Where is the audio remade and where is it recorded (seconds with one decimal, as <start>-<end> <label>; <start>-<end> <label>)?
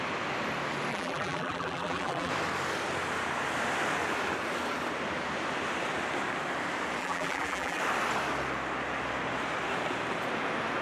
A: 0.0-0.9 recorded; 0.9-2.3 remade; 2.3-7.0 recorded; 7.0-7.8 remade; 7.8-10.8 recorded